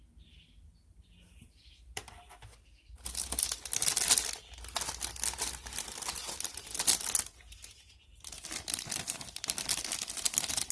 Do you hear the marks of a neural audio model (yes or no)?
no